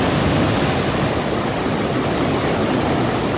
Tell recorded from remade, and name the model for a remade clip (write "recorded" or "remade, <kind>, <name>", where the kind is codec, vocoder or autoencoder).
recorded